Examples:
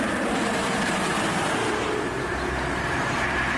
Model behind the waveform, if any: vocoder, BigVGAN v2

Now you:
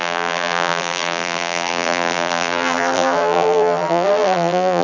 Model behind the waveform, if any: vocoder, BigVGAN v2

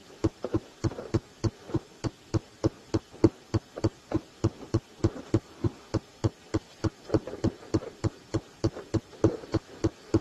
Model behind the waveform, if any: vocoder, BigVGAN v2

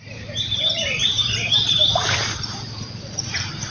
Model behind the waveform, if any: vocoder, BigVGAN v2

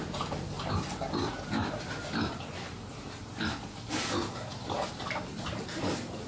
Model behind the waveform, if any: vocoder, BigVGAN v2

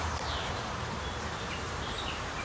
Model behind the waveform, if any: vocoder, BigVGAN v2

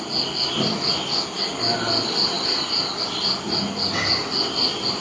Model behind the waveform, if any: none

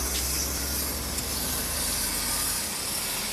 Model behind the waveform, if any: none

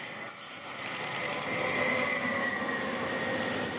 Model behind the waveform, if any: none